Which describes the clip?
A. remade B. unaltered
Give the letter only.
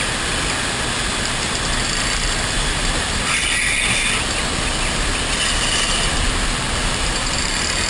B